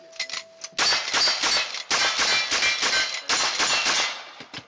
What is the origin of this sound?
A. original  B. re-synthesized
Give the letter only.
A